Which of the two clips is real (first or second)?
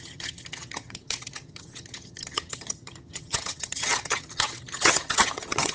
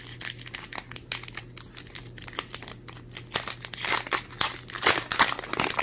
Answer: second